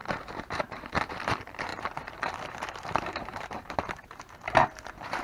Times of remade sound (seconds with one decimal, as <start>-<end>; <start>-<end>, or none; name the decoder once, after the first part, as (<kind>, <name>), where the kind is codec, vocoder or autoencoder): 0.0-5.2 (vocoder, BigVGAN v2)